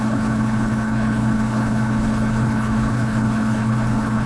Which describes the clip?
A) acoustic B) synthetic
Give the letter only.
B